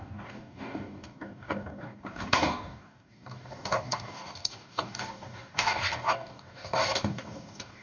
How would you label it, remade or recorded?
remade